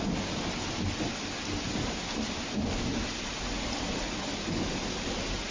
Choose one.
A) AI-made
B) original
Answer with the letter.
B